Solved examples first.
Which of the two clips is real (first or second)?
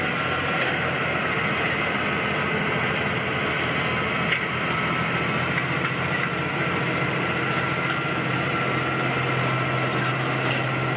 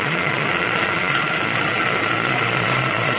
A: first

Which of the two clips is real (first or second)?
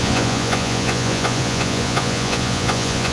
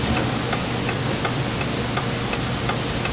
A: second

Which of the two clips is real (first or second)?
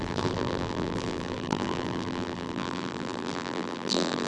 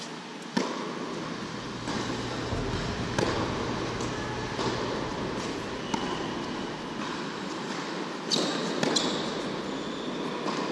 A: second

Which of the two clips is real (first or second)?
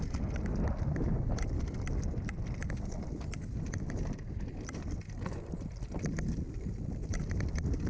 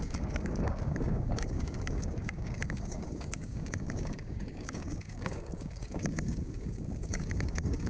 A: first